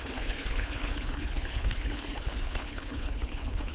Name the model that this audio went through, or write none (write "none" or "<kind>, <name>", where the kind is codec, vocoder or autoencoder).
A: codec, HILCodec